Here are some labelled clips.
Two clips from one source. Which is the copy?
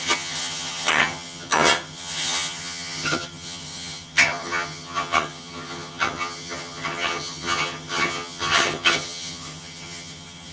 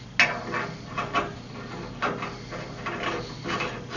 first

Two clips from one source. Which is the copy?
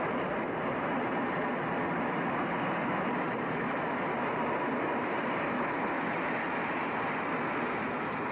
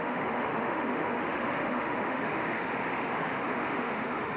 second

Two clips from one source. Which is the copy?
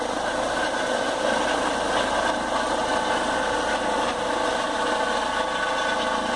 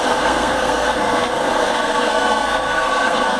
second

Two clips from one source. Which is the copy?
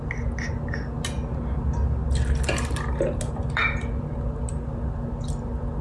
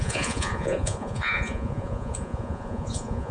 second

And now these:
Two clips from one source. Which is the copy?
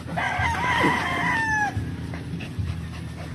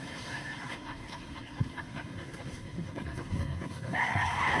second